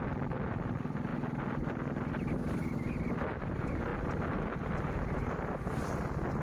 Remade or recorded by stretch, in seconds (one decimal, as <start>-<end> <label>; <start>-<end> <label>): 0.0-1.1 remade; 1.1-3.5 recorded; 3.5-3.9 remade; 3.9-4.7 recorded; 4.7-6.4 remade